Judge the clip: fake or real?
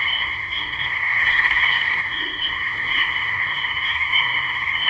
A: fake